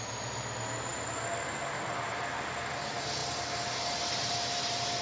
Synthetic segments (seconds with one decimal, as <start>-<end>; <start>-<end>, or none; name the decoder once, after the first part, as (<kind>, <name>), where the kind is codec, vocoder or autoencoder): 3.2-5.0 (vocoder, BigVGAN v2)